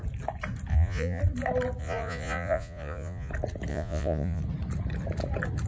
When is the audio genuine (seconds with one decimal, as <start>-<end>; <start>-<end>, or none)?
0.0-0.7; 1.2-1.8; 3.3-3.7; 4.4-5.7